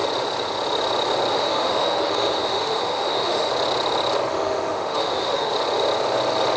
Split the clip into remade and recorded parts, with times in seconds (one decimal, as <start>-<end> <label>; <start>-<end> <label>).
0.0-1.3 recorded; 1.3-3.5 remade; 3.5-4.3 recorded; 4.3-5.5 remade; 5.5-6.6 recorded